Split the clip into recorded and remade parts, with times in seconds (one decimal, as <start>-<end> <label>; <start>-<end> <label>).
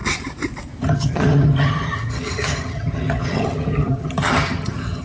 0.0-0.8 recorded; 0.8-5.0 remade